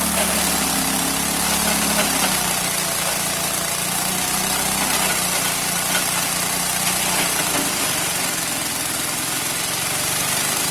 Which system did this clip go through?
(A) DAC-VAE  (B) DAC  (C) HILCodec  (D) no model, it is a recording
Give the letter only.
D